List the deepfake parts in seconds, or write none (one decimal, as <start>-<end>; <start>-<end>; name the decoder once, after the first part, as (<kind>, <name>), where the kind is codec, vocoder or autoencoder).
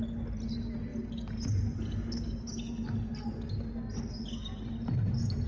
none